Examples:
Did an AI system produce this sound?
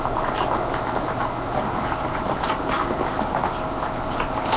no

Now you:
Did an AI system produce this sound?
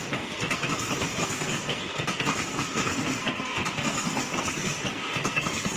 yes